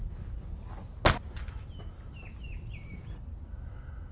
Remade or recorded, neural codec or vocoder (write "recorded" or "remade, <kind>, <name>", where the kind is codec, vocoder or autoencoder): recorded